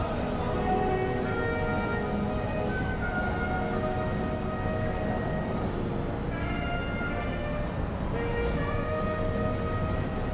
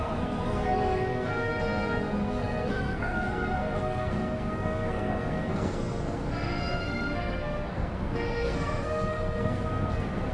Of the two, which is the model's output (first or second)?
second